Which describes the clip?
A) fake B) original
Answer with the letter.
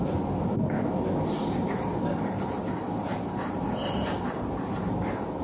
B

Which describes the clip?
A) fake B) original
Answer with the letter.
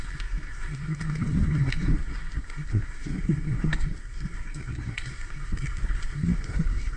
A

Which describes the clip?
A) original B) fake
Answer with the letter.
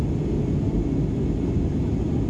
A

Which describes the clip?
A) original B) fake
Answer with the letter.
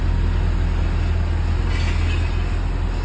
A